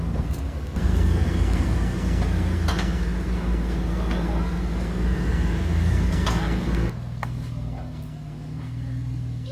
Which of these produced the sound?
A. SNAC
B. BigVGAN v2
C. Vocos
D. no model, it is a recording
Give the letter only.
A